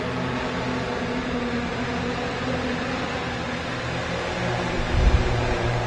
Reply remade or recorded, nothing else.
recorded